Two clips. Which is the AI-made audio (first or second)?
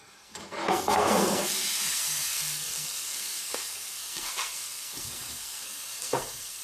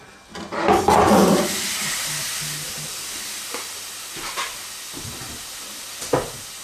first